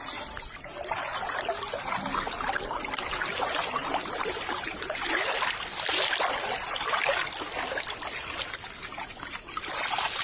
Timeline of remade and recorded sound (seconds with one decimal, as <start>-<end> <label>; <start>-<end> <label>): 0.0-10.2 recorded